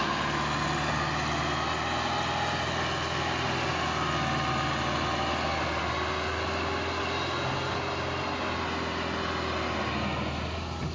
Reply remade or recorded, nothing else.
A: recorded